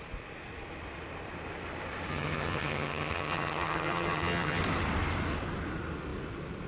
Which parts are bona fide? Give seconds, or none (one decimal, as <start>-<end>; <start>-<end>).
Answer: 0.0-2.1; 4.6-6.7